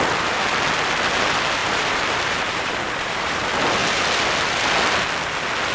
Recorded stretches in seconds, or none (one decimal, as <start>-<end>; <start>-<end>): 0.0-1.6; 3.4-5.7